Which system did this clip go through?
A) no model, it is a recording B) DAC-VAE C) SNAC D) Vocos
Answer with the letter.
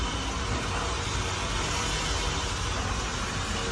A